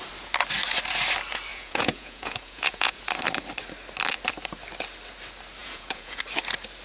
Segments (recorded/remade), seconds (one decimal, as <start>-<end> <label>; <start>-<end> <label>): 0.0-1.5 recorded; 1.5-3.0 remade; 3.0-5.6 recorded; 5.6-6.2 remade; 6.2-6.8 recorded